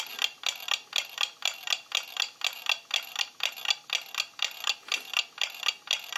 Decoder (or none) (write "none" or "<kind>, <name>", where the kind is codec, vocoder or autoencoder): none